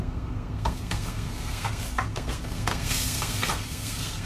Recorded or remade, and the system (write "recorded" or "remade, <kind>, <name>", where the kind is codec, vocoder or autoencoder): remade, codec, SNAC